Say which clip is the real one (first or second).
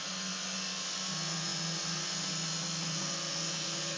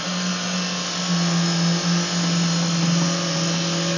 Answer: second